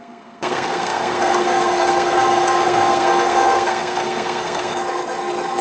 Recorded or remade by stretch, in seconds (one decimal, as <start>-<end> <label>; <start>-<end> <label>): 0.0-5.6 remade